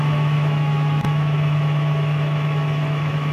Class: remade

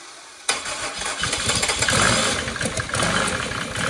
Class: recorded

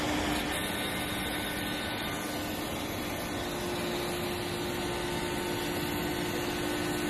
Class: recorded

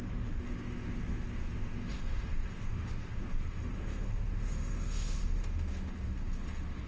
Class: remade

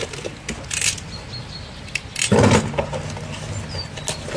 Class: recorded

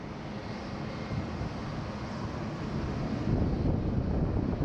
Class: recorded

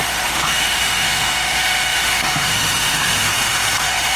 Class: remade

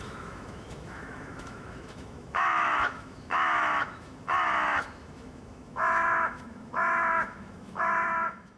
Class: remade